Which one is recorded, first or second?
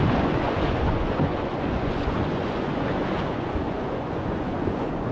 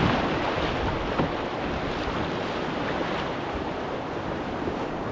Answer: second